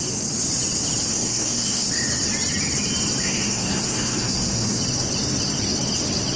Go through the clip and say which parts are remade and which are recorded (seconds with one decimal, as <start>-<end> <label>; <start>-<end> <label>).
0.0-1.1 recorded; 1.1-1.9 remade; 1.9-3.2 recorded; 3.2-4.8 remade; 4.8-6.4 recorded

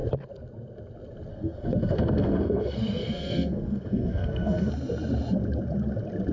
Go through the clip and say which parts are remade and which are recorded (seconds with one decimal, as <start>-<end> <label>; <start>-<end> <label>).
0.0-1.3 recorded; 1.3-4.7 remade; 4.7-6.3 recorded

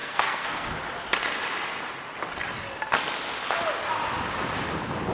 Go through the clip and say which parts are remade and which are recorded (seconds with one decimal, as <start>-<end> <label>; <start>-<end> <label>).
0.0-0.7 remade; 0.7-5.1 recorded

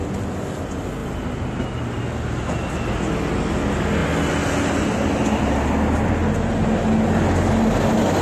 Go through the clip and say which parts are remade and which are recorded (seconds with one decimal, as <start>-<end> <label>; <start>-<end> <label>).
0.0-8.2 recorded